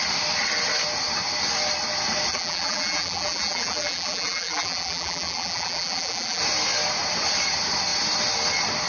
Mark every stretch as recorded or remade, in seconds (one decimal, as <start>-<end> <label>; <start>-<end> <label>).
0.0-2.3 recorded; 2.3-6.4 remade; 6.4-8.9 recorded

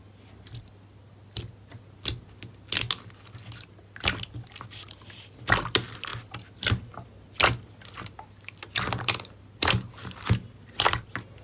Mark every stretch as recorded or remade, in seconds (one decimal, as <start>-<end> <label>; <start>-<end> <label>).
0.0-11.4 recorded